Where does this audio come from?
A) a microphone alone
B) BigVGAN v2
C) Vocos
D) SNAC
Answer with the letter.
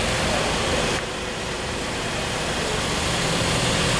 A